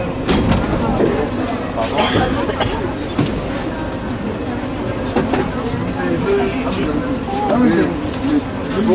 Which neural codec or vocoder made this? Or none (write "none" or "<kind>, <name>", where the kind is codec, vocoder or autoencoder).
none